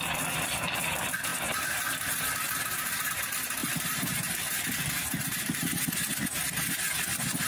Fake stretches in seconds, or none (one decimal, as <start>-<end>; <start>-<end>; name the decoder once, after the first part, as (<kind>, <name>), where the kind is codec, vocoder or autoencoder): 3.6-5.7 (vocoder, BigVGAN v2)